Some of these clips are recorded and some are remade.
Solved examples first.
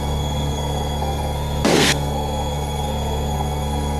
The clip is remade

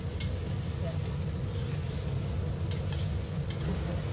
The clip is recorded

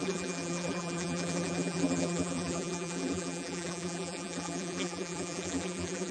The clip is remade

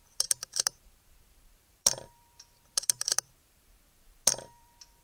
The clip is remade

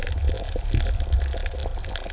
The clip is recorded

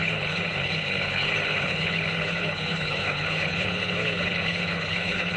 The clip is remade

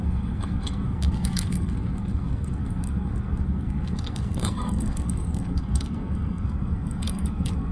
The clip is remade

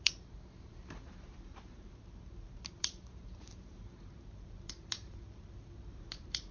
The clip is remade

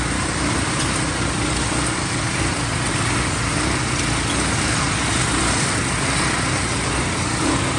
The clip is recorded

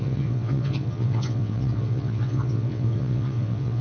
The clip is remade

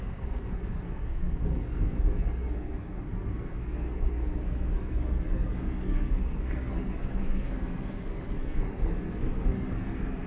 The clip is remade